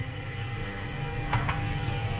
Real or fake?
fake